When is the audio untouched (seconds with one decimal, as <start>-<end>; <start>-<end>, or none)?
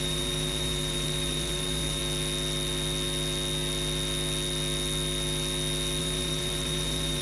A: 2.0-6.0